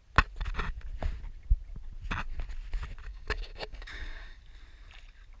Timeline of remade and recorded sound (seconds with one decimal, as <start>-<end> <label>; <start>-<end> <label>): 0.0-3.1 recorded; 3.1-4.4 remade; 4.4-5.4 recorded